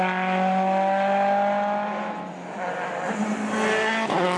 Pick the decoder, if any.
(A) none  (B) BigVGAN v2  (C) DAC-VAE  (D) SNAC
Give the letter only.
A